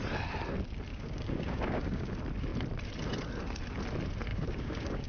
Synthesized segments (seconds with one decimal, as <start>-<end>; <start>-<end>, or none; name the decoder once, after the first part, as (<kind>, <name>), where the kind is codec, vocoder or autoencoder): 0.9-2.1 (codec, DAC); 4.3-5.1